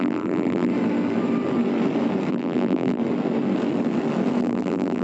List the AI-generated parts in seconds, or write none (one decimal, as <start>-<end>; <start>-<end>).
0.0-0.7; 2.3-3.0; 4.4-5.0